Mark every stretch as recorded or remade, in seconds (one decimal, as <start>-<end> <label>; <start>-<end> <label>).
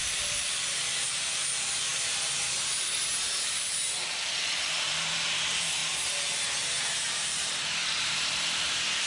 0.0-5.8 remade; 5.8-6.8 recorded; 6.8-9.1 remade